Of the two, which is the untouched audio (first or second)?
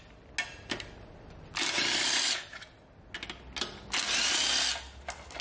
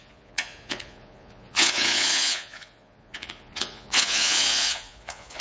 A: first